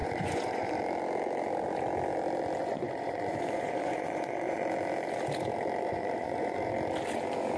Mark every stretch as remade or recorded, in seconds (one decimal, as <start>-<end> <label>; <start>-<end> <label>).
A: 0.0-0.8 remade; 0.8-2.6 recorded; 2.6-4.6 remade; 4.6-5.8 recorded; 5.8-6.7 remade; 6.7-7.6 recorded